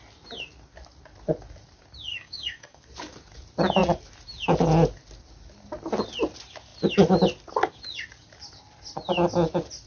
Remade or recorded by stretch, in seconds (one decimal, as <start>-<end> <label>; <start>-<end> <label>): 0.0-2.1 recorded; 2.1-2.8 remade; 2.8-9.9 recorded